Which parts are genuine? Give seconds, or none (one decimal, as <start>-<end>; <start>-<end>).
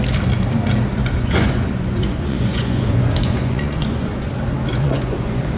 0.0-0.9; 4.3-4.7